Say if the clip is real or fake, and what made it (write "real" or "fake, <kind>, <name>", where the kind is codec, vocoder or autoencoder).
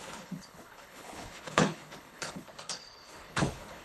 fake, codec, HILCodec